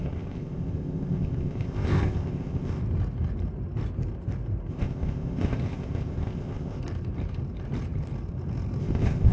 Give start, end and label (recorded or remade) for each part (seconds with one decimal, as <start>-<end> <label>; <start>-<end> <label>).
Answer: 0.0-2.8 remade; 2.8-4.7 recorded; 4.7-6.8 remade; 6.8-8.8 recorded; 8.8-9.3 remade